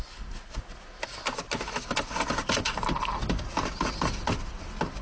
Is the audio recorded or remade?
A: recorded